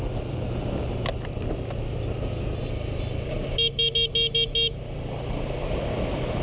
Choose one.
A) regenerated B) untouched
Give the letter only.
B